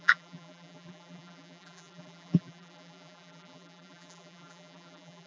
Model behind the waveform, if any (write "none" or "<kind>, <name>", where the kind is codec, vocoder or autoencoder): vocoder, BigVGAN v2